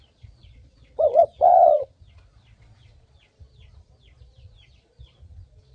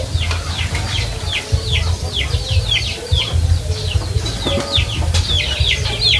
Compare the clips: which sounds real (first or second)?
second